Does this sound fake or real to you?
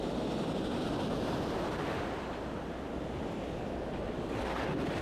real